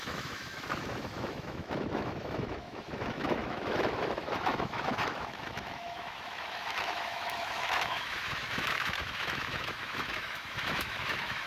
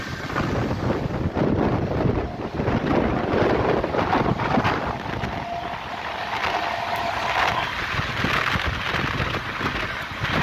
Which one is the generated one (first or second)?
first